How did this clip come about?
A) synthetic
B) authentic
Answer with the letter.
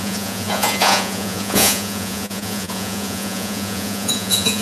A